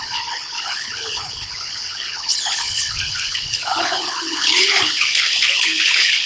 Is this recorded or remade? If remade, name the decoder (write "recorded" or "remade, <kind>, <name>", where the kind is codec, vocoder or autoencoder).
remade, codec, HILCodec